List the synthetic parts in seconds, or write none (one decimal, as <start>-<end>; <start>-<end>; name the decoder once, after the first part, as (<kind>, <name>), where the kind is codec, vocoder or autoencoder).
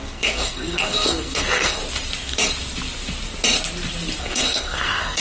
0.0-1.8 (codec, SNAC); 4.2-5.2